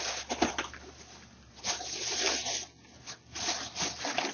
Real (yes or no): yes